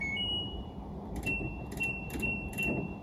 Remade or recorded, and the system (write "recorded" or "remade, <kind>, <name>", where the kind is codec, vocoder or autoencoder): remade, vocoder, BigVGAN v2